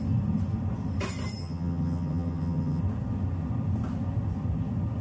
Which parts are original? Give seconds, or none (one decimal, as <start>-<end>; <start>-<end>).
0.0-1.4; 2.8-5.0